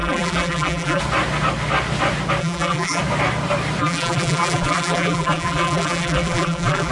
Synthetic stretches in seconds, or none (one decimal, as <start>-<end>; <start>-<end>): 0.0-1.0; 2.4-3.0; 3.8-6.9